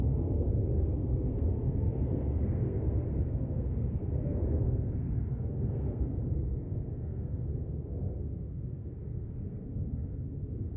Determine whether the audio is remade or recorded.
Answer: remade